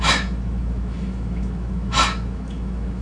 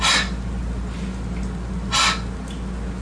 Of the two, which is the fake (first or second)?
first